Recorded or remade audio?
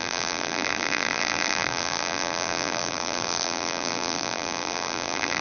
remade